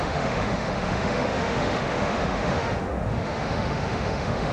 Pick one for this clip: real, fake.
fake